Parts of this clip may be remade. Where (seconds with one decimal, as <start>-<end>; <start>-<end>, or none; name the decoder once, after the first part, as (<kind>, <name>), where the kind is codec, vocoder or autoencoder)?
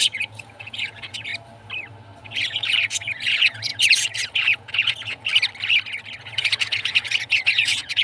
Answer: 0.0-1.3 (vocoder, Vocos); 2.2-5.3; 6.2-8.0